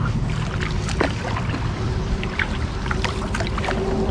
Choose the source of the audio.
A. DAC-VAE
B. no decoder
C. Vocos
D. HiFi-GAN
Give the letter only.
B